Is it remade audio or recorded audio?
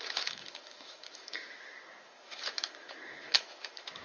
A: remade